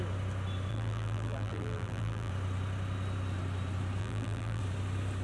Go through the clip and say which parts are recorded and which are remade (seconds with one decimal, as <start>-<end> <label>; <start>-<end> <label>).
0.0-0.7 recorded; 0.7-2.3 remade; 2.3-4.0 recorded; 4.0-4.6 remade; 4.6-5.2 recorded